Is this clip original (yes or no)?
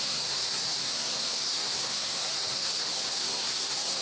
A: no